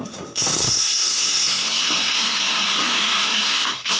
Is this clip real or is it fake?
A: fake